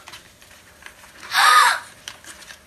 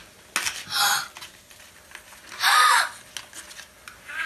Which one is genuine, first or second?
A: second